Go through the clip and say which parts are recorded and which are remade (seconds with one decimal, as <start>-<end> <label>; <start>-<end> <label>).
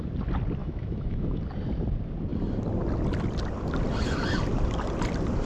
0.0-0.6 recorded; 0.6-1.4 remade; 1.4-5.5 recorded